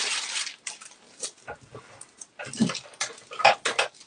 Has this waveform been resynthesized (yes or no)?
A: no